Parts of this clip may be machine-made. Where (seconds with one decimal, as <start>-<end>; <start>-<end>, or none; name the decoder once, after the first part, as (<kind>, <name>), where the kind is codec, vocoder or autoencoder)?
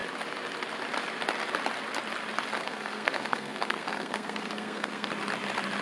2.6-5.1 (codec, SNAC)